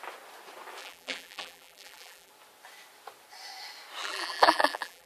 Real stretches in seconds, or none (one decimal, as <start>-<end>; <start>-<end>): 0.0-0.8; 2.3-4.0